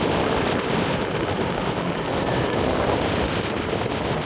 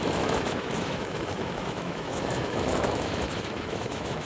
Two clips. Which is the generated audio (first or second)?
second